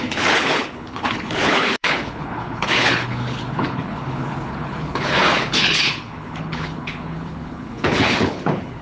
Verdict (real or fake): fake